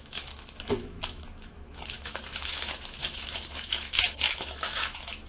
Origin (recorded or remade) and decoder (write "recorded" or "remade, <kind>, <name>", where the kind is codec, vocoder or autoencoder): remade, autoencoder, DAC-VAE